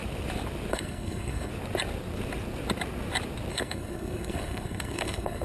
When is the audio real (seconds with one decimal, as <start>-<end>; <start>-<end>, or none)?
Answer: 0.0-0.7; 1.5-3.5